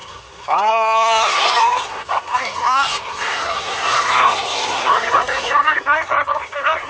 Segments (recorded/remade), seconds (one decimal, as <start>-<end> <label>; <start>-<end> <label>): 0.0-6.9 remade